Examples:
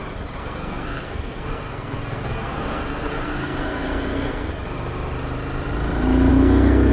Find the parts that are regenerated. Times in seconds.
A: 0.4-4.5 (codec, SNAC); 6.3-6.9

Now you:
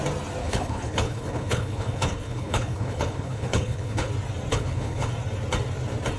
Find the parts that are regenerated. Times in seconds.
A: 0.4-4.1 (codec, HILCodec); 4.5-5.1

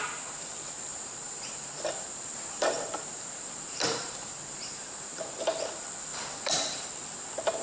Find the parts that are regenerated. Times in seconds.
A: 0.9-5.2 (vocoder, BigVGAN v2); 6.1-6.9

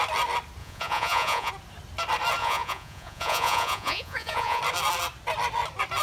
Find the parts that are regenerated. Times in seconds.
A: 0.6-1.5 (vocoder, Vocos); 2.4-4.6

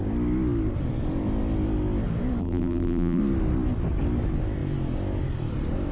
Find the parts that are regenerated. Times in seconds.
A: 2.4-3.2 (vocoder, BigVGAN v2)

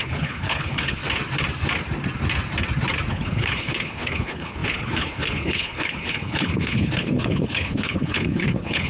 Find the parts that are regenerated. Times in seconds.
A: 0.0-1.0 (codec, HILCodec); 3.1-8.9

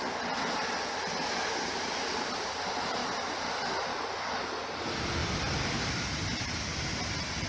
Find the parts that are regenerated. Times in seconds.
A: 3.0-4.1 (vocoder, BigVGAN v2)

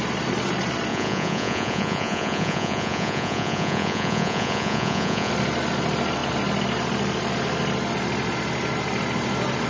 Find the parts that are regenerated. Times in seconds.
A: 0.9-5.3 (vocoder, Vocos)